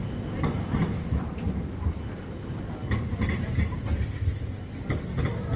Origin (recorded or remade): recorded